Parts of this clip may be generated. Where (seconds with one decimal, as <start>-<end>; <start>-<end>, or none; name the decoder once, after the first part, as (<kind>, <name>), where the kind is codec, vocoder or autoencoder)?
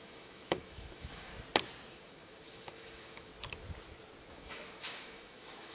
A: 0.0-1.3 (autoencoder, DAC-VAE); 1.9-3.3; 4.3-5.7